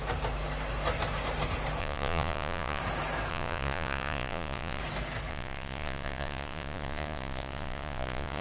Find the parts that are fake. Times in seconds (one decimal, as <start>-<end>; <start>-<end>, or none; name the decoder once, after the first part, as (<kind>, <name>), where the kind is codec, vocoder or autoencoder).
1.8-2.8 (vocoder, Vocos); 3.3-4.8; 5.3-8.4